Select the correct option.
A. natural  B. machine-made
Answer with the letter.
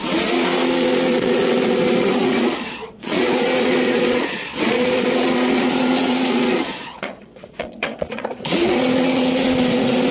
B